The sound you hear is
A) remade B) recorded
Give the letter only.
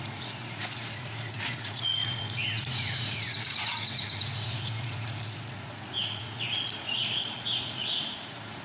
A